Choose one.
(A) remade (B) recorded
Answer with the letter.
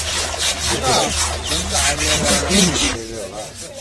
B